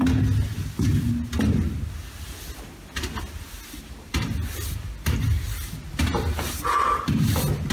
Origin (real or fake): real